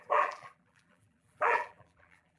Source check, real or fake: fake